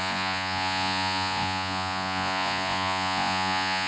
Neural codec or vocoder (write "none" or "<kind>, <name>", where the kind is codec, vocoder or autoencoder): vocoder, Vocos